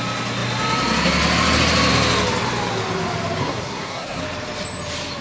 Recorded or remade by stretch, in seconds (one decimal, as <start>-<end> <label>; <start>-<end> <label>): 0.0-3.4 recorded; 3.4-4.2 remade; 4.2-5.2 recorded